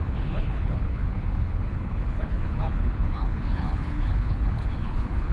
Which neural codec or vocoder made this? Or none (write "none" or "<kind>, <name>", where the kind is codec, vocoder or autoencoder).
codec, HILCodec